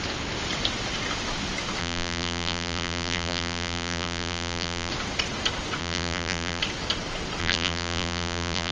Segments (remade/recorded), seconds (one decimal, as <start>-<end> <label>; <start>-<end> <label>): 0.0-1.8 recorded; 1.8-4.9 remade; 4.9-5.8 recorded; 5.8-6.6 remade; 6.6-7.4 recorded; 7.4-8.7 remade